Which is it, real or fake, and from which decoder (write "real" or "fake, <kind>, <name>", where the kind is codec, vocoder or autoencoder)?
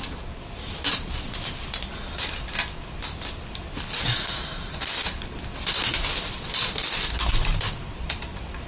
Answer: real